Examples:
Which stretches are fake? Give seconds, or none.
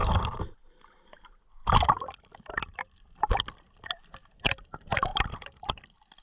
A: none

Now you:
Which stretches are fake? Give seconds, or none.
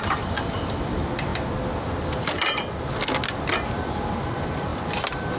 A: 0.0-1.3 (vocoder, BigVGAN v2); 3.8-4.7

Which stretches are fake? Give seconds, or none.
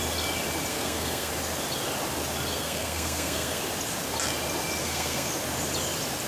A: 0.7-1.3 (codec, SNAC); 2.5-3.6; 4.8-5.3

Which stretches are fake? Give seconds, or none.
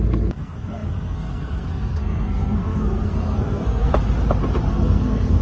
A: 0.0-3.9 (codec, SNAC); 4.7-5.4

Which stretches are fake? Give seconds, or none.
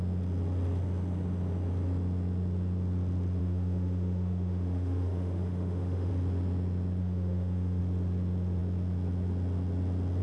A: 3.4-6.1 (autoencoder, DAC-VAE); 7.0-7.8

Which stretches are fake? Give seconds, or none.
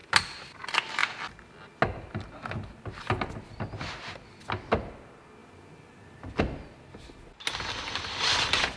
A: 0.0-0.6 (vocoder, BigVGAN v2); 5.4-6.4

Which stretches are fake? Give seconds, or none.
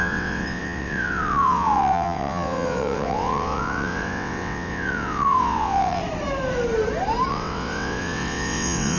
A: 0.0-6.0 (vocoder, WaveNeXt); 7.3-9.0